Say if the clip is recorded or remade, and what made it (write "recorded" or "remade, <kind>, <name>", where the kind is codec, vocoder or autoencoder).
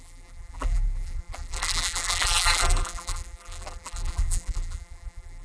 remade, vocoder, BigVGAN v2